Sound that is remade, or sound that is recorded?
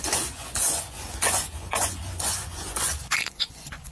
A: remade